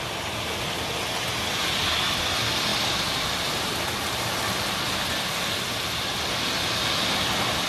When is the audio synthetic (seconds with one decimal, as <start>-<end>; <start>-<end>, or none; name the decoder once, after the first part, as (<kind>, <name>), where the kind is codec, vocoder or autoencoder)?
none